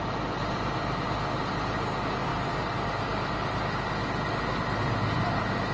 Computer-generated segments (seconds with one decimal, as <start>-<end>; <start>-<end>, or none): none